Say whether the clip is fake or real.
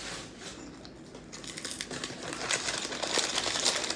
real